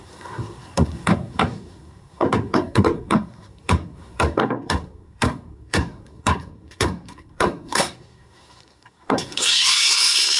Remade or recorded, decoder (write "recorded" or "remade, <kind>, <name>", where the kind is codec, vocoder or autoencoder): remade, codec, SNAC